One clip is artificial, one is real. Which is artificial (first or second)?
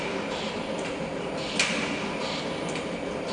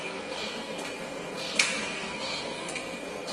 second